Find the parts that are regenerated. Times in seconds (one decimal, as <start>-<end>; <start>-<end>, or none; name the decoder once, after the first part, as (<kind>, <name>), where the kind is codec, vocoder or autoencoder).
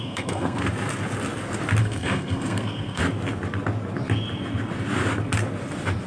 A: 0.0-0.6 (codec, SNAC); 1.8-3.0